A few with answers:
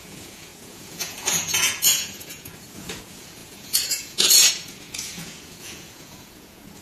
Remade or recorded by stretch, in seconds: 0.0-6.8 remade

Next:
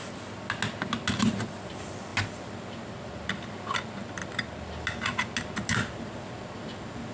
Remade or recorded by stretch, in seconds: 0.0-7.1 recorded

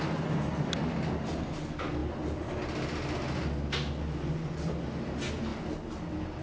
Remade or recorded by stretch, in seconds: 0.0-6.4 recorded

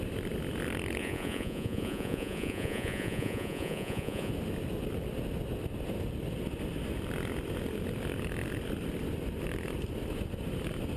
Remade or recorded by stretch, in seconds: 0.0-1.0 recorded; 1.0-4.3 remade; 4.3-11.0 recorded

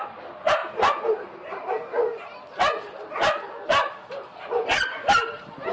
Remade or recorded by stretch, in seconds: 0.0-5.7 recorded